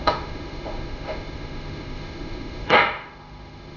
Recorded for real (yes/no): no